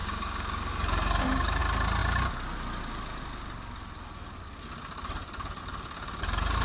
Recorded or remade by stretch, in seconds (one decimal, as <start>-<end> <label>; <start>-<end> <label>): 0.0-1.6 remade; 1.6-6.6 recorded